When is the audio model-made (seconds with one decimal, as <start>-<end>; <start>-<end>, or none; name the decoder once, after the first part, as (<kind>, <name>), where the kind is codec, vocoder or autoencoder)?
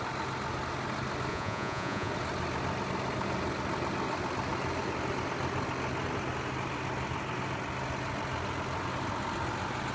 1.3-2.1 (vocoder, Vocos)